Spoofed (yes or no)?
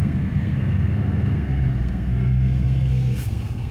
yes